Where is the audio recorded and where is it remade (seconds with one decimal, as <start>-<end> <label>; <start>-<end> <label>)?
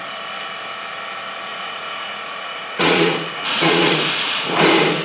0.0-1.5 recorded; 1.5-4.5 remade; 4.5-5.0 recorded